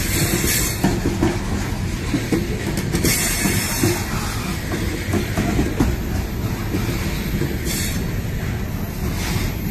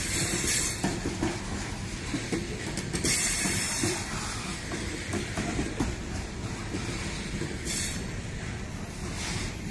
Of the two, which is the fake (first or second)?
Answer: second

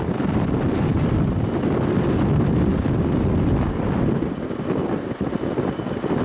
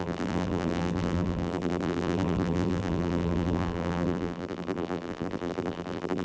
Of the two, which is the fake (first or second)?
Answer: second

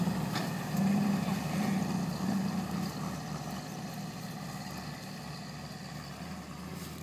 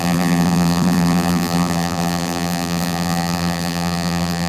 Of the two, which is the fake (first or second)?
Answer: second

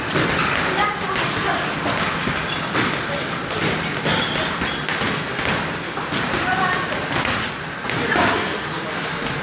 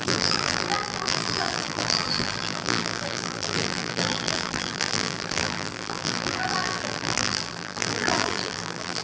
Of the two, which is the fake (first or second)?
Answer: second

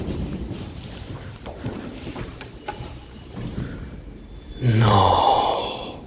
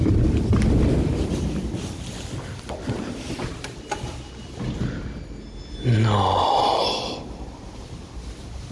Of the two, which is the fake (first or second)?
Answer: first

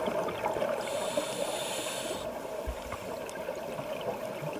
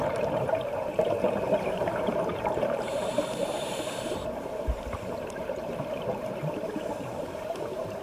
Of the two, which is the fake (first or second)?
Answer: second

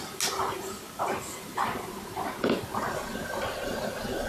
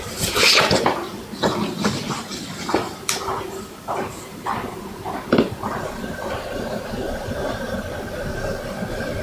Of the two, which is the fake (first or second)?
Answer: second